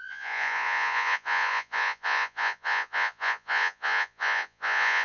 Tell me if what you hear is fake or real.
fake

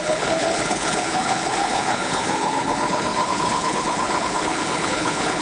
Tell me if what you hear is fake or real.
fake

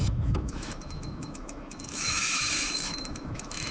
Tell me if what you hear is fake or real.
fake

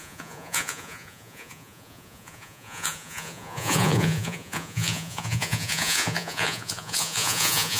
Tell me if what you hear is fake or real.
fake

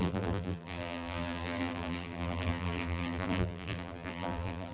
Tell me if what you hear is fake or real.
fake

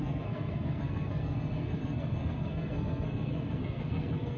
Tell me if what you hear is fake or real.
fake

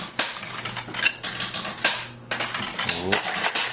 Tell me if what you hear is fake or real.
real